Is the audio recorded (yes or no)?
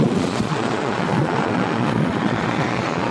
no